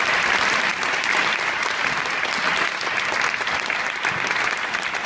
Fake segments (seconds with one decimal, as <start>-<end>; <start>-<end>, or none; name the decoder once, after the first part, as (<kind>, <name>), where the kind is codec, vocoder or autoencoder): none